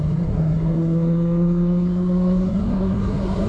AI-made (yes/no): yes